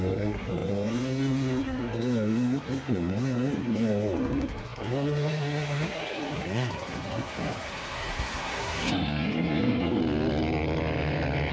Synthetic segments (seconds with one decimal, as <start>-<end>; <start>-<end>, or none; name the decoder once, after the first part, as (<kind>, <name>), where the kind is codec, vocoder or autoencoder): 0.0-10.0 (codec, SNAC)

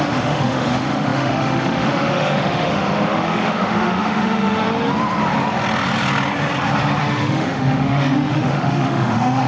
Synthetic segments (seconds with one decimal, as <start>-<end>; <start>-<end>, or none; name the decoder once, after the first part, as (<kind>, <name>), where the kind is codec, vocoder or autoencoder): 0.0-4.6 (autoencoder, DAC-VAE); 7.0-9.5

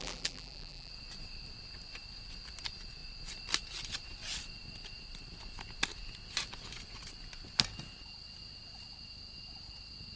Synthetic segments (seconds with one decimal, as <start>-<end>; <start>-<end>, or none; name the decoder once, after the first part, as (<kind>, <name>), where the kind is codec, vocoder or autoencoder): 0.0-0.9 (vocoder, BigVGAN v2)

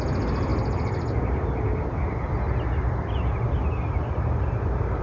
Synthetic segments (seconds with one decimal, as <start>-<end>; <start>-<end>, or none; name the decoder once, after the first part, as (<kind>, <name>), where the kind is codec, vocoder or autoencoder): none